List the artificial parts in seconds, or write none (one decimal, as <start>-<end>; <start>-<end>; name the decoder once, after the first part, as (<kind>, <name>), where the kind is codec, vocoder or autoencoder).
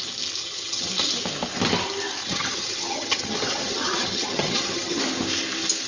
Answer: 0.4-0.9 (vocoder, HiFi-GAN); 2.2-5.0